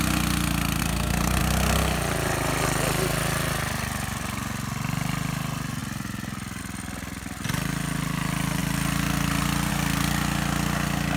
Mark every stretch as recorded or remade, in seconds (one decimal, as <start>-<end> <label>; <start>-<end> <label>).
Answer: 0.0-0.8 recorded; 0.8-1.4 remade; 1.4-11.2 recorded